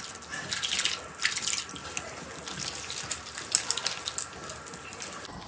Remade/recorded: recorded